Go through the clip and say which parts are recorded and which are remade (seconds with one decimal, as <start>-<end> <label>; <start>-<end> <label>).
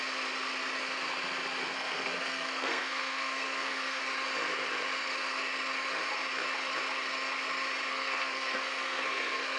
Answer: 0.0-1.6 recorded; 1.6-4.0 remade; 4.0-7.9 recorded; 7.9-9.6 remade